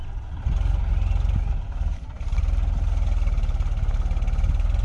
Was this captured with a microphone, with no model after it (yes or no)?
yes